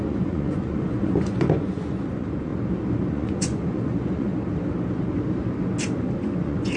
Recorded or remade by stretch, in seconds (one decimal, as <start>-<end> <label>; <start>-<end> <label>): 0.0-2.5 remade; 2.5-3.1 recorded; 3.1-4.3 remade; 4.3-5.9 recorded; 5.9-6.8 remade